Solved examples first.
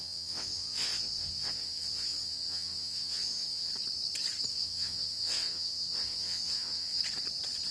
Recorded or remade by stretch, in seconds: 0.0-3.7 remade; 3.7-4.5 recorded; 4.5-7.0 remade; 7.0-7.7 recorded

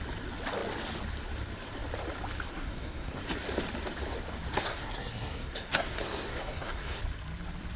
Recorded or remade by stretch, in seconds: 0.0-2.5 recorded; 2.5-3.2 remade; 3.2-4.5 recorded; 4.5-7.0 remade; 7.0-7.8 recorded

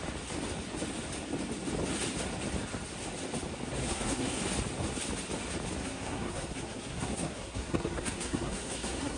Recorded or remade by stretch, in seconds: 0.0-3.8 recorded; 3.8-4.4 remade; 4.4-5.8 recorded; 5.8-9.2 remade